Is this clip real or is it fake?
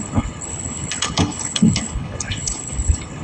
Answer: fake